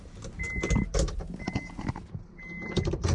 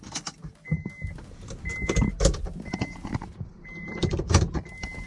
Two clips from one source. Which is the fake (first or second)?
second